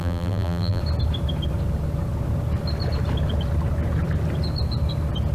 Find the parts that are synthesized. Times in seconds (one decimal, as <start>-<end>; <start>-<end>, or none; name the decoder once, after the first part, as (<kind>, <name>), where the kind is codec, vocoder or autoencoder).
0.0-0.8 (vocoder, BigVGAN v2)